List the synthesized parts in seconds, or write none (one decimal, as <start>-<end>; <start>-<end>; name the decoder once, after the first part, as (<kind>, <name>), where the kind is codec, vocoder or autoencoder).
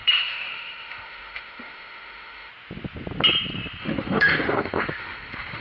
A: 0.0-2.5 (autoencoder, DAC-VAE); 3.8-5.6